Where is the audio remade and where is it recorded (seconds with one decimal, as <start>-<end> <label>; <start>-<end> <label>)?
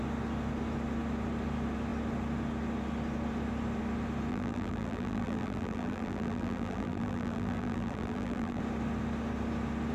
0.0-4.3 recorded; 4.3-8.6 remade; 8.6-9.9 recorded